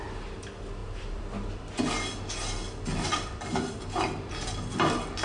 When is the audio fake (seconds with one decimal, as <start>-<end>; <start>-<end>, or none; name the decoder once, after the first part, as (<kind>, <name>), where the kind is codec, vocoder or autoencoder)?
0.8-1.7 (vocoder, BigVGAN v2); 2.9-3.7